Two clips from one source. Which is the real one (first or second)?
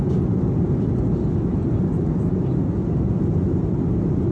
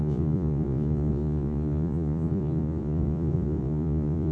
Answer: first